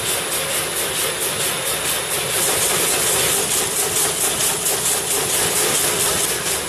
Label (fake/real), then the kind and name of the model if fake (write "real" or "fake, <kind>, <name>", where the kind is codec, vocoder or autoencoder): real